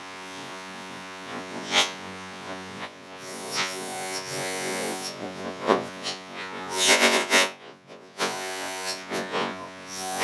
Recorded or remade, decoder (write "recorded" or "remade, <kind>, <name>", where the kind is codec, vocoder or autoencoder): remade, vocoder, Vocos